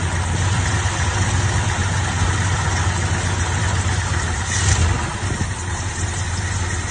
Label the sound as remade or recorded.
recorded